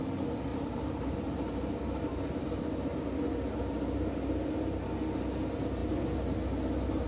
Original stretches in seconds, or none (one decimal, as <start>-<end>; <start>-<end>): 0.0-0.5; 2.6-7.1